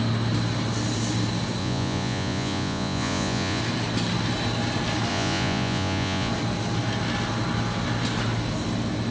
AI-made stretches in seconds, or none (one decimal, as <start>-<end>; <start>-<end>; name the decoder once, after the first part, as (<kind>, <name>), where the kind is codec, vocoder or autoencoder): 1.6-3.6 (vocoder, Vocos); 5.1-6.3